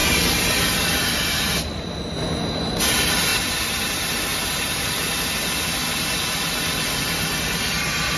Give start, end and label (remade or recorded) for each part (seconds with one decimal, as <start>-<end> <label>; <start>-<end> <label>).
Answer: 0.0-3.3 recorded; 3.3-3.9 remade; 3.9-4.3 recorded; 4.3-4.9 remade; 4.9-8.2 recorded